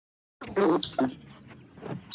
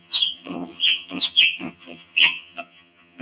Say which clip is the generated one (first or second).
second